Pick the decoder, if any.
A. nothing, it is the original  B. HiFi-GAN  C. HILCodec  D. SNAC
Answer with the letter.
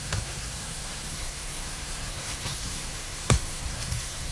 D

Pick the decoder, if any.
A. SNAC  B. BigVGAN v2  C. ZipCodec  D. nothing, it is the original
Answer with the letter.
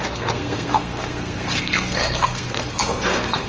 A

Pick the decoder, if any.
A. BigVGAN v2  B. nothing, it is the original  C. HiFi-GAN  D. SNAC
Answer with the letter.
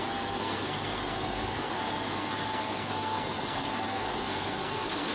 D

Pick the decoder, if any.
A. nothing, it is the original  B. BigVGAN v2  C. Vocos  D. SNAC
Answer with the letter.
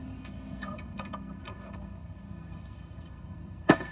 D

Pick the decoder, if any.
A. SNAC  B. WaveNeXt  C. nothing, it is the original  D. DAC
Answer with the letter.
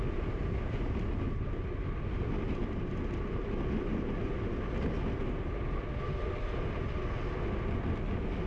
C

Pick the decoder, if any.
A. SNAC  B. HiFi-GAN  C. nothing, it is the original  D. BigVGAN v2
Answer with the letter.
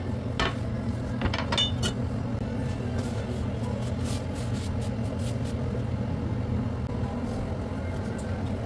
C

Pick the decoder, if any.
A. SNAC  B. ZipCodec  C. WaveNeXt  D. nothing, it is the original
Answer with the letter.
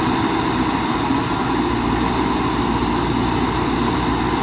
D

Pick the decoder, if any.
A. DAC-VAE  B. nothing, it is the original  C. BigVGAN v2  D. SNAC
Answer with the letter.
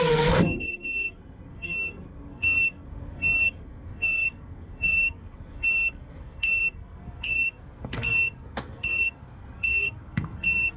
D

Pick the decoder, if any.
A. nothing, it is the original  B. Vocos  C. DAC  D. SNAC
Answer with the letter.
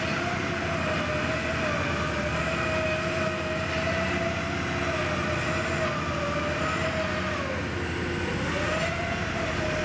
A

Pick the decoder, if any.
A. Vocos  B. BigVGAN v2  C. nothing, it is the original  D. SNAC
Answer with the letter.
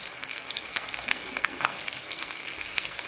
D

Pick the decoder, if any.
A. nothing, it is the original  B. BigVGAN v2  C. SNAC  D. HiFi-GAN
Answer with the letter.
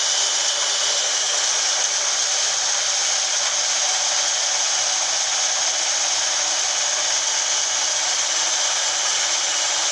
A